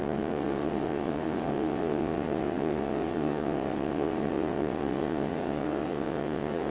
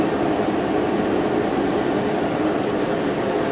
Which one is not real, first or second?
first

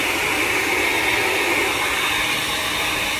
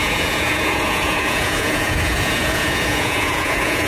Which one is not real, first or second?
second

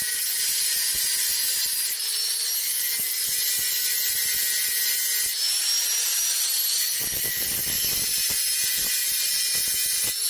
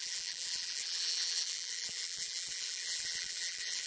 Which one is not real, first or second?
second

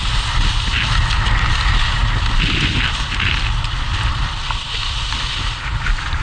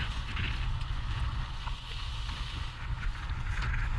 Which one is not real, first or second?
second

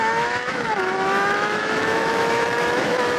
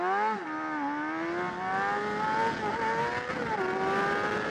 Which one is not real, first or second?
first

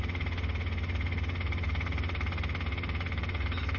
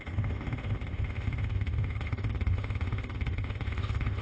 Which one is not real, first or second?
second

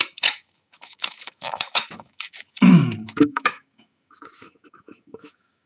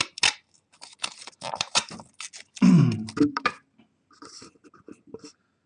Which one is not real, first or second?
first